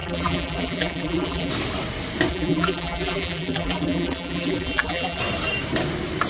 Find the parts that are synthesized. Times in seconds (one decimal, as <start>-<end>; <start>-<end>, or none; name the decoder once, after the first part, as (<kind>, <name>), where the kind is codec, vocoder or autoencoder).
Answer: 0.0-1.5 (vocoder, BigVGAN v2); 2.3-5.2